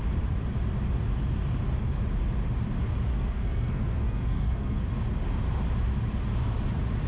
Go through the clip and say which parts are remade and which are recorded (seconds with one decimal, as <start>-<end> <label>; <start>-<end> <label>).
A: 0.0-3.1 recorded; 3.1-4.8 remade; 4.8-7.1 recorded